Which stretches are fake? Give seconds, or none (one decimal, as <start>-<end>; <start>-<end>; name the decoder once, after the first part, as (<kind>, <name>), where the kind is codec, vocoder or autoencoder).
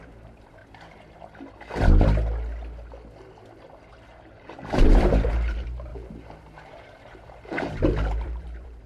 0.0-0.6 (vocoder, BigVGAN v2); 3.9-8.9